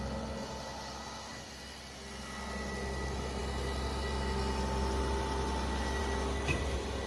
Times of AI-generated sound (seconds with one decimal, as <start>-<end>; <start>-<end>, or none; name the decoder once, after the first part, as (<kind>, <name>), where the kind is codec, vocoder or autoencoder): none